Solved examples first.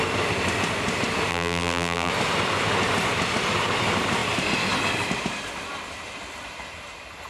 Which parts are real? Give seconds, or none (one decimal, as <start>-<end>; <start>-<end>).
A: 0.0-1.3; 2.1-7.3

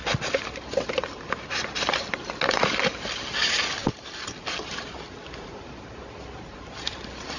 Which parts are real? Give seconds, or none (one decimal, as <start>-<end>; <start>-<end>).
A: 0.0-7.4

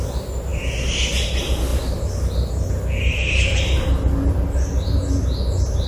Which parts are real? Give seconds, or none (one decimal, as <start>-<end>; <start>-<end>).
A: 0.0-5.9

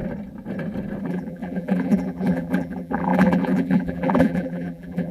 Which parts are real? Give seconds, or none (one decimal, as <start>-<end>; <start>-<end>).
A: 0.0-1.0

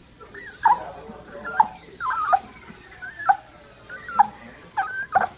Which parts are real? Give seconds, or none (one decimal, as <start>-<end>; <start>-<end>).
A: 3.2-5.4